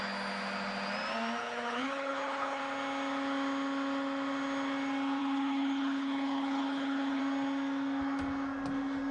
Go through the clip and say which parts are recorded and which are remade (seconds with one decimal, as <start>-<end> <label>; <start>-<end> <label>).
0.0-1.4 recorded; 1.4-2.6 remade; 2.6-5.2 recorded; 5.2-7.2 remade; 7.2-9.1 recorded